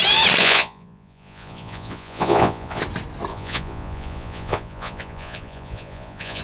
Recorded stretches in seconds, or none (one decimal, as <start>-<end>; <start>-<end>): 0.0-0.4; 2.8-3.3